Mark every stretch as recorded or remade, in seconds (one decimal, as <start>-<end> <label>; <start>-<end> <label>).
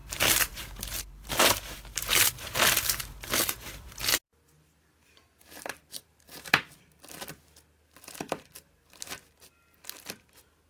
0.0-2.3 remade; 2.3-3.0 recorded; 3.0-4.0 remade; 4.0-5.4 recorded; 5.4-6.9 remade; 6.9-10.7 recorded